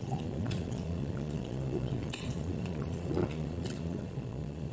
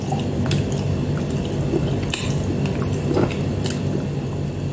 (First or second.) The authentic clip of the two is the second